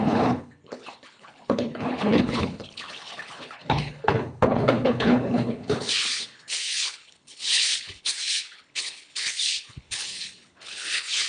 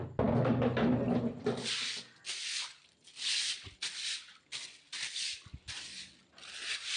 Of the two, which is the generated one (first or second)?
first